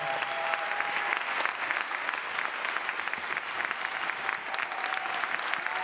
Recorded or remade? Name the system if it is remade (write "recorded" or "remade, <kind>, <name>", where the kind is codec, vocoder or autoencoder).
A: recorded